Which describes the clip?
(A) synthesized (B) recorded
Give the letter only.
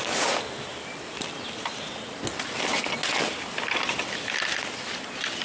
B